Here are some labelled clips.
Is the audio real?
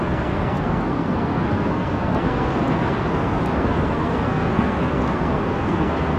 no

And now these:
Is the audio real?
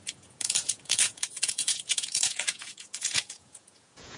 no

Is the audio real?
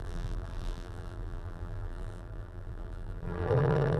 no